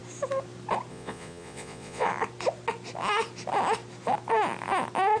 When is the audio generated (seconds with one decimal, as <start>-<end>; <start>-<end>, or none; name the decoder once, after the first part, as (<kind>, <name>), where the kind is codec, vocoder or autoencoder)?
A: 0.9-2.1 (vocoder, Vocos)